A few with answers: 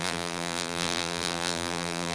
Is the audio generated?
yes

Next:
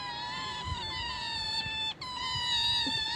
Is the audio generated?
yes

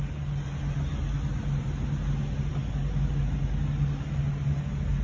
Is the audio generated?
no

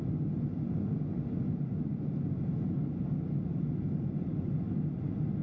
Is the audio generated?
no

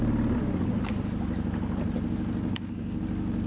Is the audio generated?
no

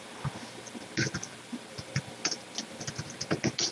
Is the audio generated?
no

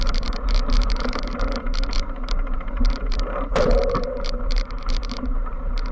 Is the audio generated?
yes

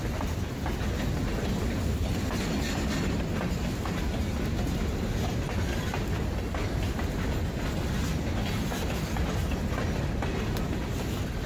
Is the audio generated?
no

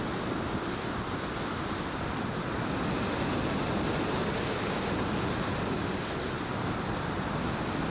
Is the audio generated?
no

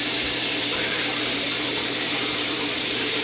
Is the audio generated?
yes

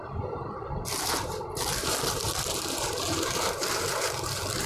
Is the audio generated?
yes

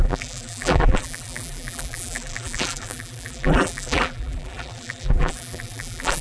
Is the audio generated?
yes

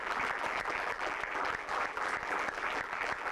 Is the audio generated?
yes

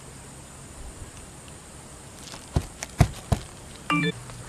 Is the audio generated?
yes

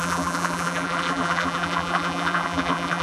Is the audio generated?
yes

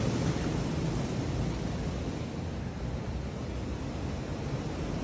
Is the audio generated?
no